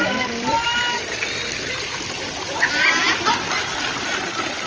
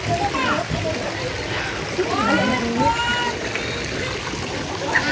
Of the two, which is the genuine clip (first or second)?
second